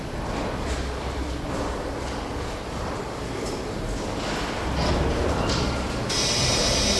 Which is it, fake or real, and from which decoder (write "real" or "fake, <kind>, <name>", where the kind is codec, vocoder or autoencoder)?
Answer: real